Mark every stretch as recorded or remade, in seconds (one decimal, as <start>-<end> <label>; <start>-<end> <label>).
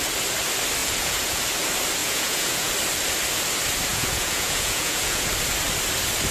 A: 0.0-0.8 recorded; 0.8-1.4 remade; 1.4-2.0 recorded; 2.0-2.7 remade; 2.7-3.9 recorded; 3.9-5.3 remade; 5.3-6.3 recorded